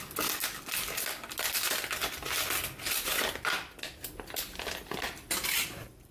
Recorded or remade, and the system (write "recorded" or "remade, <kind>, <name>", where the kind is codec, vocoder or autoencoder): recorded